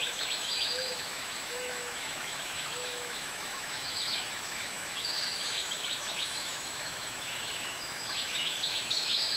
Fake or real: fake